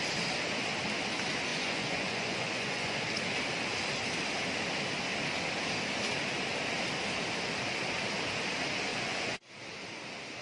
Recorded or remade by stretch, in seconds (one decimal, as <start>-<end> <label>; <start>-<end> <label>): 0.0-1.5 recorded; 1.5-3.0 remade; 3.0-8.9 recorded; 8.9-9.5 remade; 9.5-10.4 recorded